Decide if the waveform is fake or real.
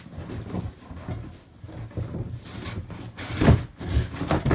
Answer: real